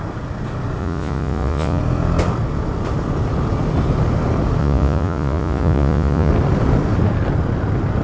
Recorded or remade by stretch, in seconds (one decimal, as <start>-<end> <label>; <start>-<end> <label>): 0.0-0.8 recorded; 0.8-1.8 remade; 1.8-4.6 recorded; 4.6-6.3 remade; 6.3-8.0 recorded